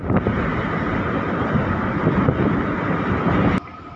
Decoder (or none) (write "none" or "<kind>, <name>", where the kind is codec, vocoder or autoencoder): none